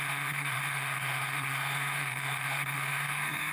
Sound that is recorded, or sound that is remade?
remade